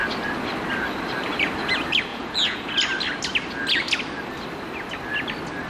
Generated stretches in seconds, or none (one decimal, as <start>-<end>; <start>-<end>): 2.1-2.7